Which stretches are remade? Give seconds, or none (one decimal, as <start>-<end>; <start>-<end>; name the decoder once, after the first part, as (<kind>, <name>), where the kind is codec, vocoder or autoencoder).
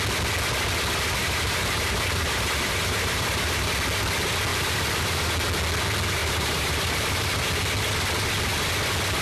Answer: 1.2-3.7 (vocoder, BigVGAN v2); 4.5-5.3; 6.2-7.5